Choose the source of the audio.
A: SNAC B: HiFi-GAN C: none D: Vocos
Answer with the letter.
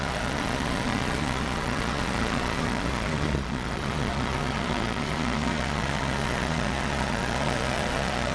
D